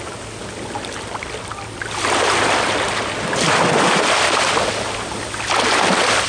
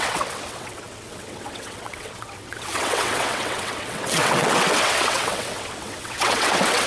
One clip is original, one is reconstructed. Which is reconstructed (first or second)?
second